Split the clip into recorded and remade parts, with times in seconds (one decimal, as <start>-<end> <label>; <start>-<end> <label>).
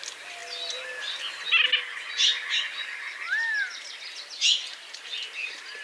0.0-5.8 recorded